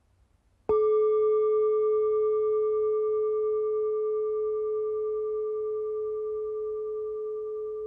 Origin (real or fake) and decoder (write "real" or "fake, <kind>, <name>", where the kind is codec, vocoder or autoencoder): real